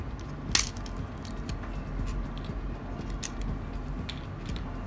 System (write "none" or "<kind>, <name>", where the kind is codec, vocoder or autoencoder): none